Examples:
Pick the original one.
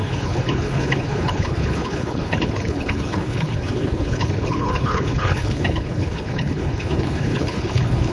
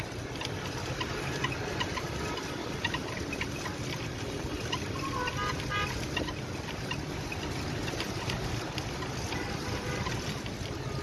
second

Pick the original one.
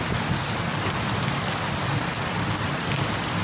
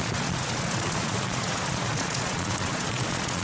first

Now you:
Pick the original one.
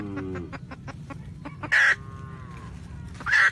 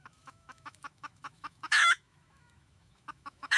first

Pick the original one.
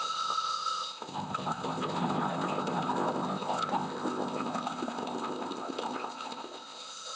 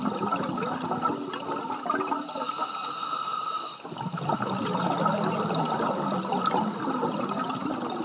second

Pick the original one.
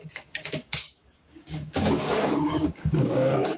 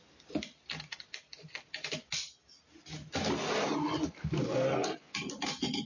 second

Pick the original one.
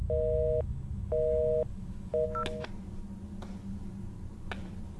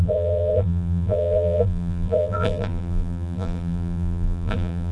first